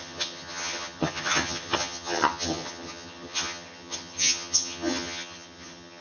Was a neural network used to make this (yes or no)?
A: yes